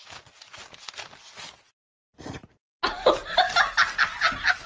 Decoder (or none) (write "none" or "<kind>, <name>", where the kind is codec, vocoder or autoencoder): none